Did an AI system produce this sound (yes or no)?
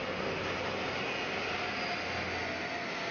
no